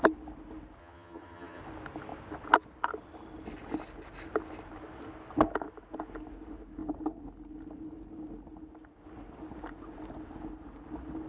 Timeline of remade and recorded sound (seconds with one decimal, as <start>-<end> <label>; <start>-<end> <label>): 0.0-0.8 recorded; 0.8-1.6 remade; 1.6-11.3 recorded